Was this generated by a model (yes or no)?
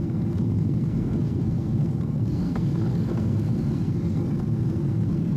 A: yes